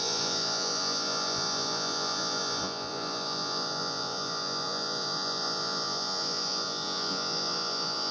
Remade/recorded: remade